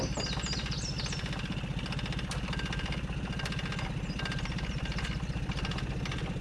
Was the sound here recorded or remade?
recorded